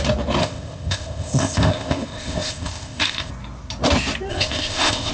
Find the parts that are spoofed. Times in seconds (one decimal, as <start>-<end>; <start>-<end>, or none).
0.4-3.3; 4.3-5.1

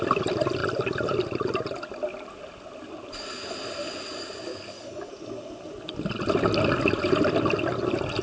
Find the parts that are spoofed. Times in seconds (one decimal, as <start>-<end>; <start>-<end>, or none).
4.5-5.1